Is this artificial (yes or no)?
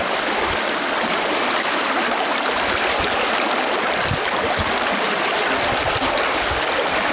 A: no